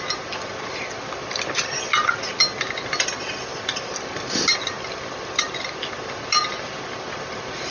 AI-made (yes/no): no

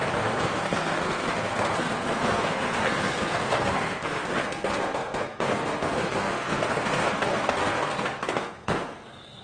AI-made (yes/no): yes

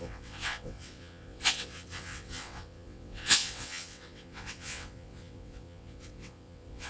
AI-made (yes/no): yes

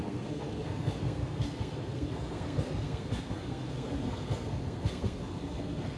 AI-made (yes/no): yes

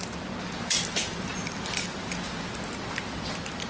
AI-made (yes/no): yes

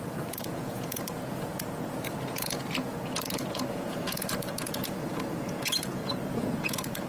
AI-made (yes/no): yes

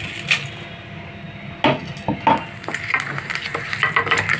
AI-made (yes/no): no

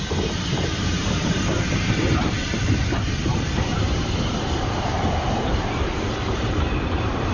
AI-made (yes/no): yes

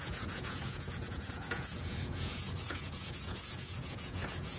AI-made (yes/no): yes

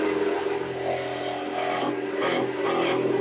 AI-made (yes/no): no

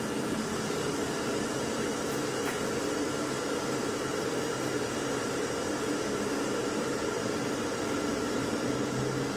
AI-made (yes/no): no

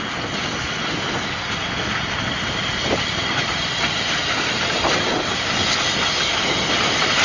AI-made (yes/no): no